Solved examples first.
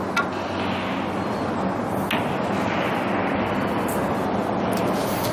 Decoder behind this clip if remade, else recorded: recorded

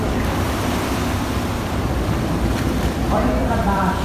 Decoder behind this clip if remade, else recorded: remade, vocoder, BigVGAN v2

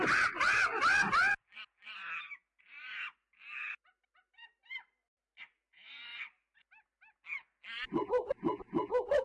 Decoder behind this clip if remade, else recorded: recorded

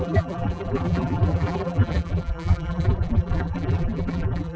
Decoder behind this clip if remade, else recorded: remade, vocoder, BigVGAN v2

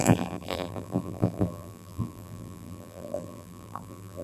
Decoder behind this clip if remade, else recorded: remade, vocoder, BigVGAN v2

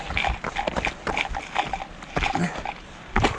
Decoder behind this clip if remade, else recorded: recorded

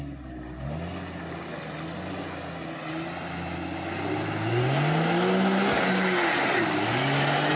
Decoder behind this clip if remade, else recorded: recorded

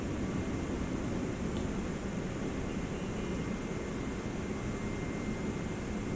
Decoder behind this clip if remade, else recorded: recorded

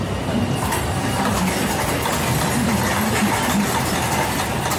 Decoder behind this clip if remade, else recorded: recorded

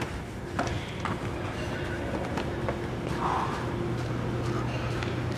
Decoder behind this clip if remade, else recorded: recorded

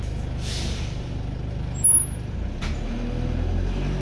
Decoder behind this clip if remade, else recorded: recorded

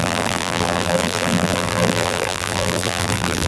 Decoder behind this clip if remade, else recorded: remade, vocoder, BigVGAN v2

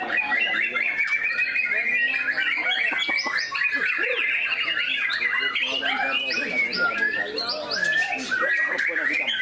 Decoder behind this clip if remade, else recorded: recorded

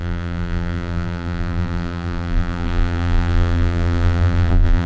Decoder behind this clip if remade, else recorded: remade, vocoder, BigVGAN v2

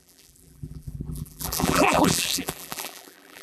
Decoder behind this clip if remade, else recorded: remade, vocoder, BigVGAN v2